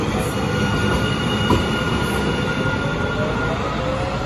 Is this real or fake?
real